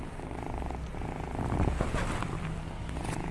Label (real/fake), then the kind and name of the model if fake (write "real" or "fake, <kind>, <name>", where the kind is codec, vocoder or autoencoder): real